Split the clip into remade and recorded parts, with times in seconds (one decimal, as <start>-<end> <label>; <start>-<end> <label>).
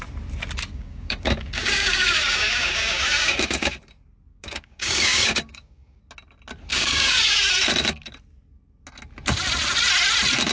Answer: 0.0-0.7 recorded; 0.7-3.7 remade; 3.7-4.3 recorded; 4.3-6.0 remade; 6.0-6.7 recorded; 6.7-7.5 remade; 7.5-10.5 recorded